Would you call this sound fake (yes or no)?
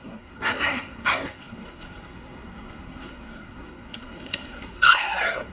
yes